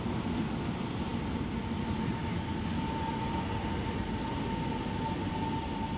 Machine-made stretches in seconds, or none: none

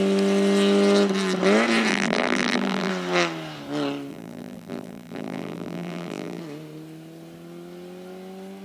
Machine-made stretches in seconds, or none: 1.9-2.9 (vocoder, BigVGAN v2); 4.1-6.4